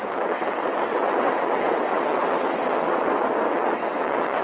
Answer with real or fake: fake